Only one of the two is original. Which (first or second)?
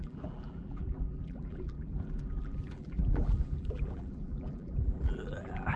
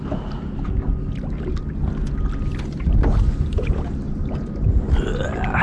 second